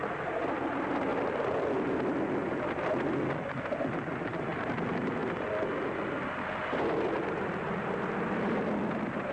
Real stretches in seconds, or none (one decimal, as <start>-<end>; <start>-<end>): 0.0-9.3